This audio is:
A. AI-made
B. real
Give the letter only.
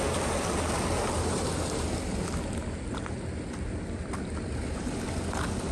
B